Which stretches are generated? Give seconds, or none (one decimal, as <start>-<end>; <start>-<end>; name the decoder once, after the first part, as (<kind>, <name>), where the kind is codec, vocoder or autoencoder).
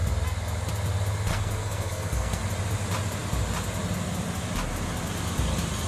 1.3-2.4 (codec, SNAC)